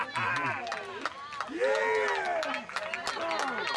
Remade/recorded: recorded